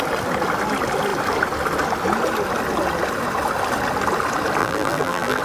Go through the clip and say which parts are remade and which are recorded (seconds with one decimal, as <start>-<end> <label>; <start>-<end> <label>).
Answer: 0.0-4.6 recorded; 4.6-5.4 remade